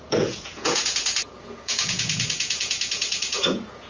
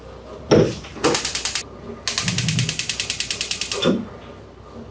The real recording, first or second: second